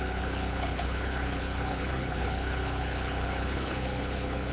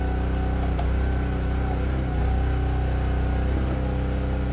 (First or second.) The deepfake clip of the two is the first